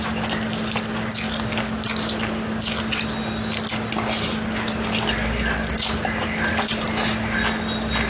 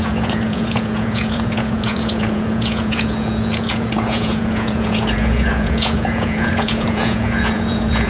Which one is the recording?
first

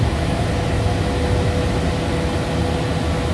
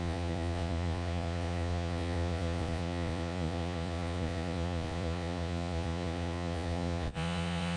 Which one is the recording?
first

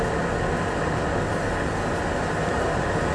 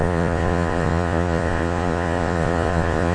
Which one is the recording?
first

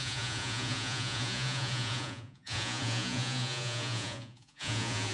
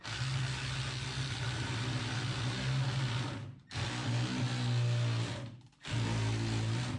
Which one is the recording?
second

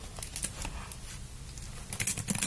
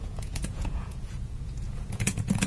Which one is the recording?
first